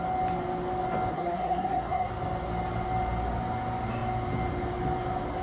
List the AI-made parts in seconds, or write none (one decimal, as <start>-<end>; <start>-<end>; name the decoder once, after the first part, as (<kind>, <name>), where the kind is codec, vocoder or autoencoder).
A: 1.1-2.1 (codec, SNAC)